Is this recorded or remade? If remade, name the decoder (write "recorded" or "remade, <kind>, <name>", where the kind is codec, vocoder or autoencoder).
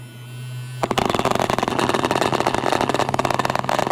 recorded